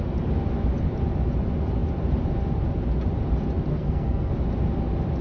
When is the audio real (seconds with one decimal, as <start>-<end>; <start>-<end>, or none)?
0.0-3.7; 4.3-5.2